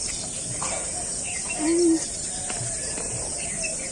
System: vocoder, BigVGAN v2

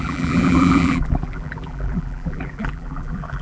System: vocoder, BigVGAN v2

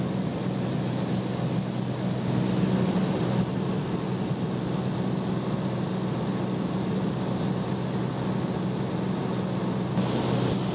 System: none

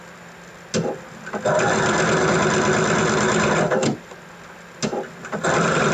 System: none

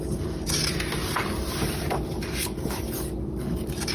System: vocoder, BigVGAN v2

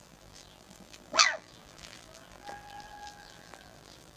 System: vocoder, BigVGAN v2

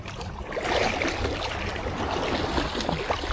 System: none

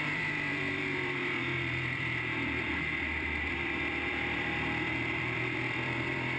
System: vocoder, BigVGAN v2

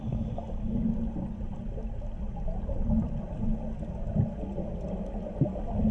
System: none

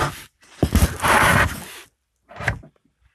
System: none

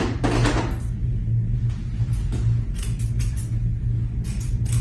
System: none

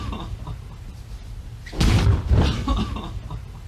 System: none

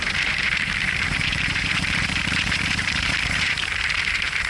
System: vocoder, BigVGAN v2